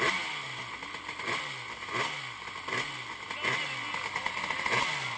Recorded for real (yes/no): yes